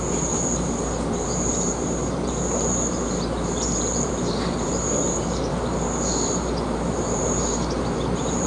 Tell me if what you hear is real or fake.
fake